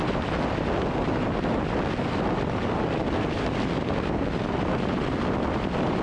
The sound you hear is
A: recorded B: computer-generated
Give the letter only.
A